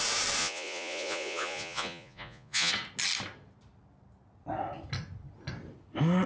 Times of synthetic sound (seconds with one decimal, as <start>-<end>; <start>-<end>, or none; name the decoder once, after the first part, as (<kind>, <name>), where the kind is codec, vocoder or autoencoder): 0.4-2.7 (vocoder, Vocos)